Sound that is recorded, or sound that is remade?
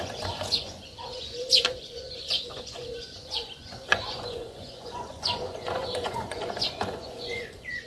remade